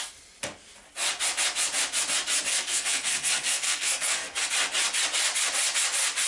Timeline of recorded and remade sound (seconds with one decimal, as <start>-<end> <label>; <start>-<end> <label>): 0.0-2.5 recorded; 2.5-4.5 remade; 4.5-6.3 recorded